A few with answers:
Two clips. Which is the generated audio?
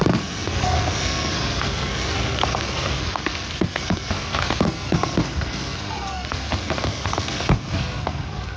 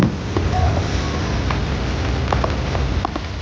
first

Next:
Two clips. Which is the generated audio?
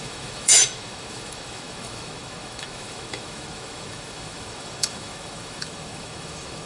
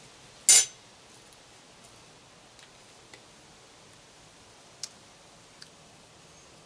first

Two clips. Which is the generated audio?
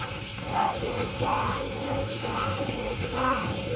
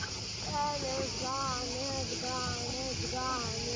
first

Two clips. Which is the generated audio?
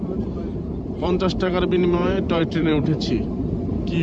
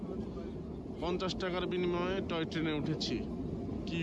first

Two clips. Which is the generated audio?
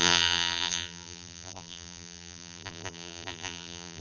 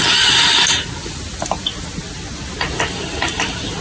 first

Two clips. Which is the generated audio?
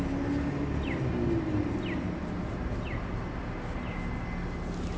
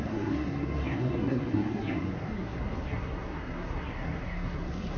second